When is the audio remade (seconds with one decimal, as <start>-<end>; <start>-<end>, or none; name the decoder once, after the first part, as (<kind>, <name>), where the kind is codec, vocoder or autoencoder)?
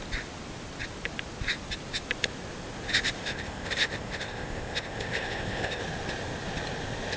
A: 3.2-5.8 (codec, ZipCodec)